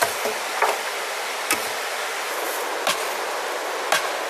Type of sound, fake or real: real